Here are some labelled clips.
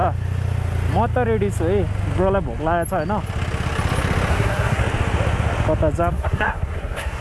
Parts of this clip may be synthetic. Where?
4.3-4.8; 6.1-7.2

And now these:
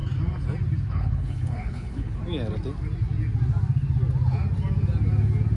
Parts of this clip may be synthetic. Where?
0.9-2.2

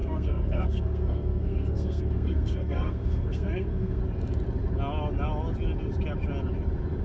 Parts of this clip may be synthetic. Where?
0.0-4.0

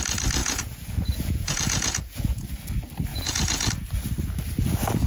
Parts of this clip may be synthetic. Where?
0.4-2.5; 3.1-3.7

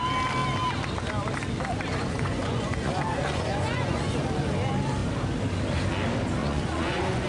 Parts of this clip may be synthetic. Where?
1.9-4.1; 6.4-7.3